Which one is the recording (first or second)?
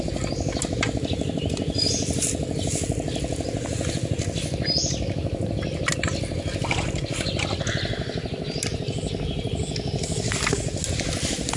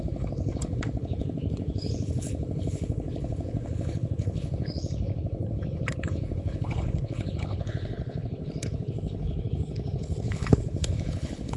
first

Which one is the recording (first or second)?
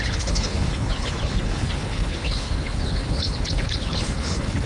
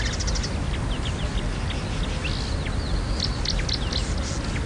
second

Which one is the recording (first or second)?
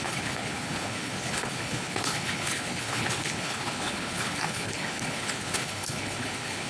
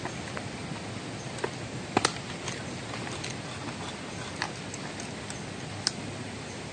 second